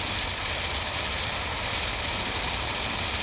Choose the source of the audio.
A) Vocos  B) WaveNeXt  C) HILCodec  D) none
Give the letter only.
D